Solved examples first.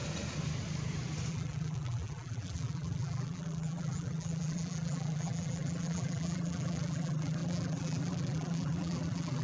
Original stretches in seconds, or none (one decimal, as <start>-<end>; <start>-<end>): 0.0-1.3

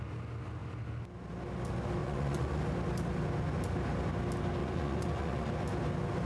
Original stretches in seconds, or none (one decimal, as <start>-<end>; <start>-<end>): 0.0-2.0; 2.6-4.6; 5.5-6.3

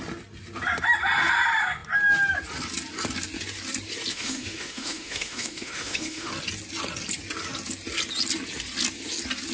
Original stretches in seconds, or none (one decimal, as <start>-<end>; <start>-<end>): 0.0-4.1; 6.3-9.5

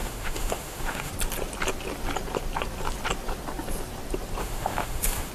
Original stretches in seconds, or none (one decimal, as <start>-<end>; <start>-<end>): 1.1-4.4

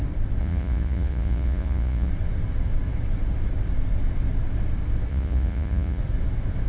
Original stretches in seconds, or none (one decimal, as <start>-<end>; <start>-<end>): 0.0-0.4; 2.1-5.1; 6.0-6.7

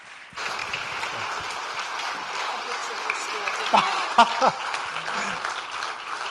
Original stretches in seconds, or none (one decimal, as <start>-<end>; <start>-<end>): 0.0-6.3